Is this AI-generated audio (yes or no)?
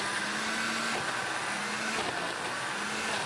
no